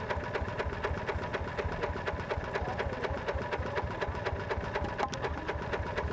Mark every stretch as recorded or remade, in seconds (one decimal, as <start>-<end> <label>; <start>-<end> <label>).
0.0-6.1 recorded